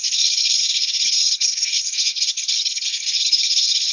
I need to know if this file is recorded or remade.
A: remade